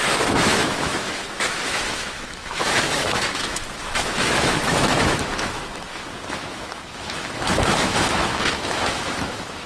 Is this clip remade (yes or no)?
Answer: yes